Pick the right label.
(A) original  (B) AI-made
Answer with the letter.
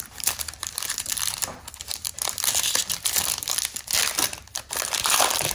B